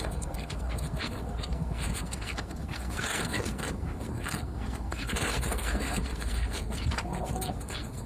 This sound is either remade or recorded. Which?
remade